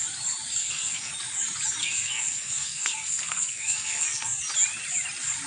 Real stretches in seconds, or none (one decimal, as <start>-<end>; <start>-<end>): 0.0-0.6; 1.1-1.8; 4.4-5.5